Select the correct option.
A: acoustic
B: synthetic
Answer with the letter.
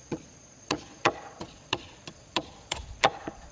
B